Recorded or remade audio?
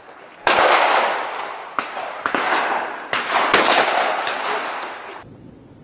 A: recorded